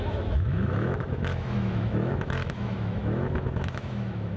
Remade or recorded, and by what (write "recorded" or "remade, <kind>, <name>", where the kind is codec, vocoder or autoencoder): remade, autoencoder, DAC-VAE